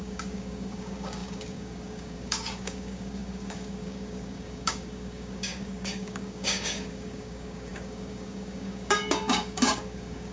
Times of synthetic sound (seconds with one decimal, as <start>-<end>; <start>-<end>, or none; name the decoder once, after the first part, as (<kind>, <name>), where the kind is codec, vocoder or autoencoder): 0.0-10.3 (codec, DAC)